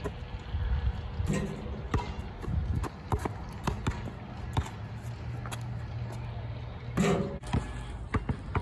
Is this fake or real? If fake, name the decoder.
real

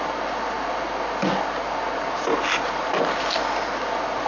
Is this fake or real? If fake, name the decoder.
real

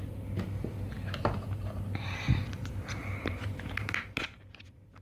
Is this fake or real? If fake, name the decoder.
fake, vocoder, BigVGAN v2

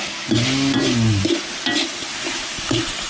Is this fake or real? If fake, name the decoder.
real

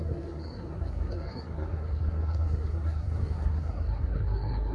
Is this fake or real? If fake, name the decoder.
fake, codec, SNAC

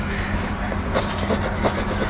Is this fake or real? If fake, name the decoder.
real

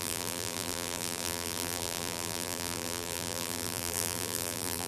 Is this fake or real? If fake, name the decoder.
fake, vocoder, BigVGAN v2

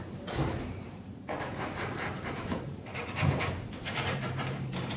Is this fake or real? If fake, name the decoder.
fake, vocoder, BigVGAN v2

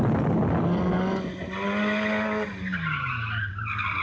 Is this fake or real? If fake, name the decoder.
real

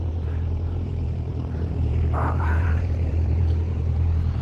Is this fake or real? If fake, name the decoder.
fake, vocoder, BigVGAN v2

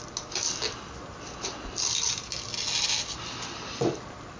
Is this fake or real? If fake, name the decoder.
real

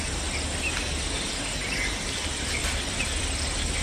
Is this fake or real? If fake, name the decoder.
real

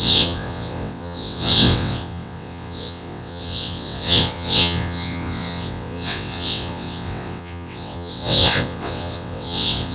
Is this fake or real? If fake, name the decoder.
fake, vocoder, WaveNeXt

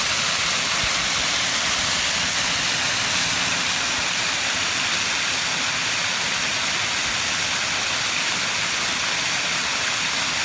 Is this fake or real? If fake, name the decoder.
real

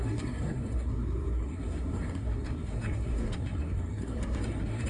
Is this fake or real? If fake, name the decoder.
fake, codec, SNAC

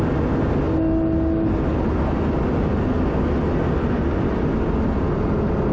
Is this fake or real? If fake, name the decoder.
real